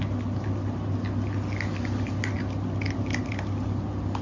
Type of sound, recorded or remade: recorded